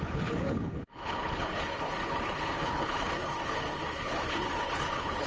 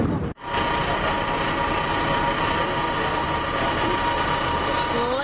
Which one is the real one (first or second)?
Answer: second